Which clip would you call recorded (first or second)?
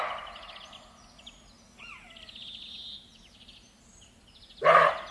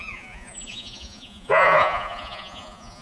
first